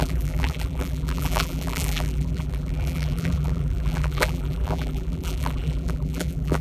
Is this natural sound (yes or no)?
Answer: no